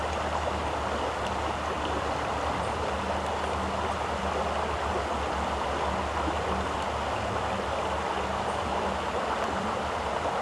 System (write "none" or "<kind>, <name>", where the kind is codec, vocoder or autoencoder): none